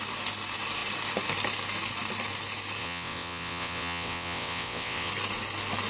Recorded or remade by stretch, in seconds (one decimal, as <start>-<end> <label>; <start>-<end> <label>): 0.0-2.8 recorded; 2.8-5.1 remade; 5.1-5.9 recorded